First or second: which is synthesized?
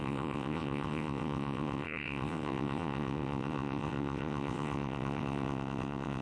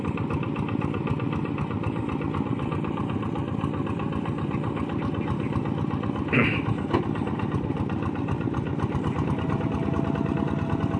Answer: first